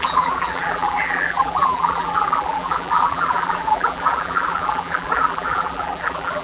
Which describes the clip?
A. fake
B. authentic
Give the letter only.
A